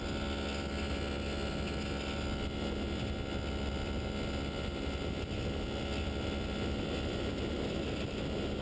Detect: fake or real real